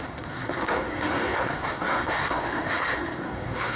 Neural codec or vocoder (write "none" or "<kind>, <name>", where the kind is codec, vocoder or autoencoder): codec, SNAC